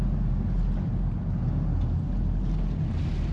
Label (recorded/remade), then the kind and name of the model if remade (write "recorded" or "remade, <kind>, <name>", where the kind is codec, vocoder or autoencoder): recorded